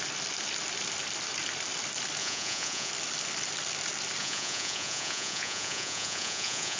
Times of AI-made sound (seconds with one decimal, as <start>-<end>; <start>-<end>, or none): 2.2-2.9; 4.2-6.8